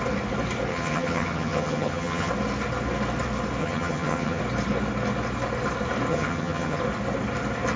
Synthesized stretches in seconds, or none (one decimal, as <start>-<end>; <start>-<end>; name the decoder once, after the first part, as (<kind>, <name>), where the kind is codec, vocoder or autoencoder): 0.7-2.3 (vocoder, HiFi-GAN); 3.6-4.4; 6.1-6.8